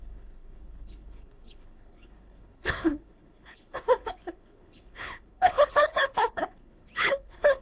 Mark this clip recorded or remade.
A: remade